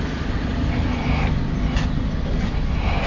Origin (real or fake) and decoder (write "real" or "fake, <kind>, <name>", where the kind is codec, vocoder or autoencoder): real